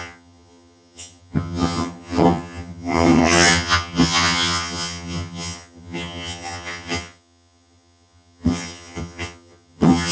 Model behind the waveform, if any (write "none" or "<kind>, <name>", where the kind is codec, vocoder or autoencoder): vocoder, HiFi-GAN